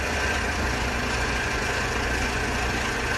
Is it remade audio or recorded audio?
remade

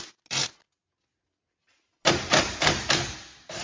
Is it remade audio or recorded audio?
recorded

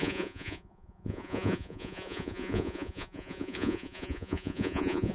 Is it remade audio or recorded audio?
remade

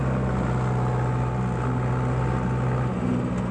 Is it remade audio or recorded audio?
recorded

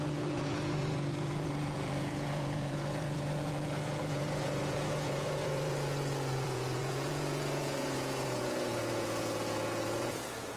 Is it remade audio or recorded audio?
remade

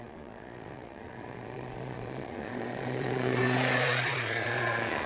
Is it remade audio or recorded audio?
remade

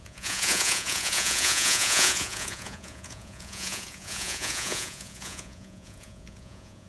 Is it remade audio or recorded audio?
remade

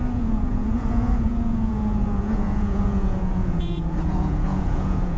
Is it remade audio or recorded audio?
remade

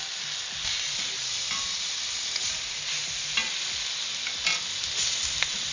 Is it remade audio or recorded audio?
recorded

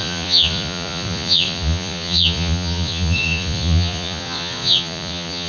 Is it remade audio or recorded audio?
remade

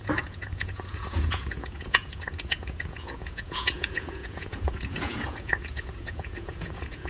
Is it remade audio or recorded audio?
remade